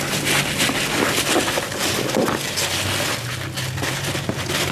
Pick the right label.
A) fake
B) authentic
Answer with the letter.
B